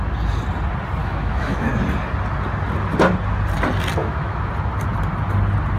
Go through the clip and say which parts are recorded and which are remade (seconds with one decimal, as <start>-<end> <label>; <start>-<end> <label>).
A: 0.0-1.0 recorded; 1.0-1.7 remade; 1.7-4.0 recorded; 4.0-4.5 remade; 4.5-5.8 recorded